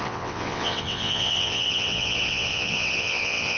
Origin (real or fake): fake